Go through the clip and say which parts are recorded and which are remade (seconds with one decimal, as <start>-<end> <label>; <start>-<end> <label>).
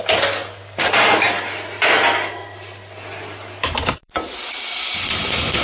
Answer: 0.0-0.4 remade; 0.4-3.8 recorded; 3.8-5.6 remade